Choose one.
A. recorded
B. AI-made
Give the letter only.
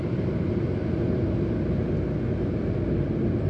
A